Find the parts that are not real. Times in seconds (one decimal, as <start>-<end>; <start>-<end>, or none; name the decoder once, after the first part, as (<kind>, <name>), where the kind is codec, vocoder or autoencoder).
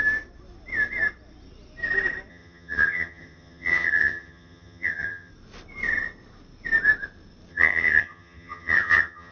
2.3-5.3 (vocoder, HiFi-GAN); 7.5-9.3